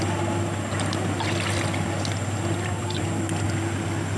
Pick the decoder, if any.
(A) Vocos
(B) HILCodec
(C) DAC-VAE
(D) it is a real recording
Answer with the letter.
D